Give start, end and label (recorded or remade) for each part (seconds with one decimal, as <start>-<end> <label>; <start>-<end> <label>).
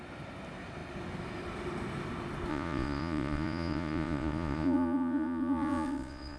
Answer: 0.0-2.5 recorded; 2.5-6.4 remade